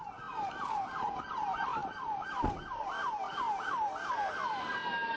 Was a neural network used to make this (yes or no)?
no